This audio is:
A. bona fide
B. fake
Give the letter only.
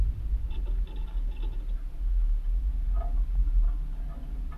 A